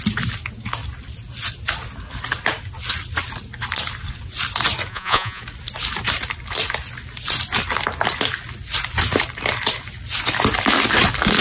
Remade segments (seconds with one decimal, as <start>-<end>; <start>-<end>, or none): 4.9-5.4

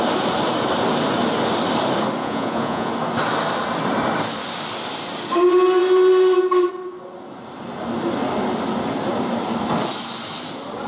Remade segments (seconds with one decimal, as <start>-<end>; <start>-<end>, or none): 2.2-2.9

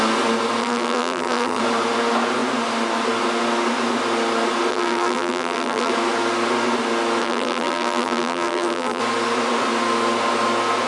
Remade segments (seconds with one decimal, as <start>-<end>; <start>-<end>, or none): 0.6-1.6; 4.7-5.9; 7.2-9.0

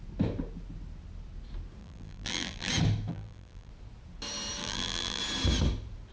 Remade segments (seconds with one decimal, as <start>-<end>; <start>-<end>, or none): 1.8-2.7; 3.1-3.7; 4.6-5.2

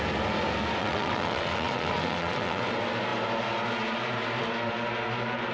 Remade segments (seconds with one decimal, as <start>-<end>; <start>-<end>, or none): 0.8-2.6

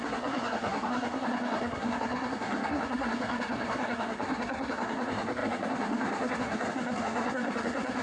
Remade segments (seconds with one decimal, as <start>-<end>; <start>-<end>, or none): 0.0-8.0

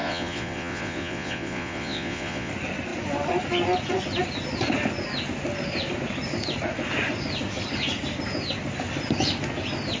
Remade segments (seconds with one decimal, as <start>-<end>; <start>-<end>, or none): 0.0-2.5